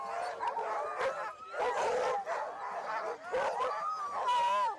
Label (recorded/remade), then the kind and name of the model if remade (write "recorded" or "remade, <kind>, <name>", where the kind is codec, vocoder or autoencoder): remade, vocoder, BigVGAN v2